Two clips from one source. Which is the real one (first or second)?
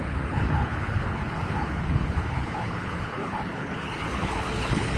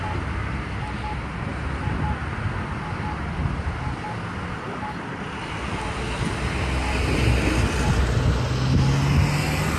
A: second